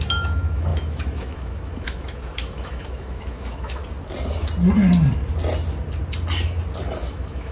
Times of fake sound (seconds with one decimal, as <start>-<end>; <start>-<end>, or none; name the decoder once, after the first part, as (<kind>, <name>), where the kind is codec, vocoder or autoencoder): 0.0-3.8 (autoencoder, DAC-VAE); 7.1-7.5